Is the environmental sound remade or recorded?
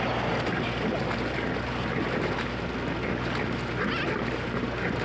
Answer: recorded